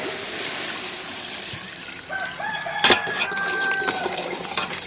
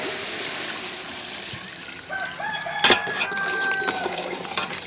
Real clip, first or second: second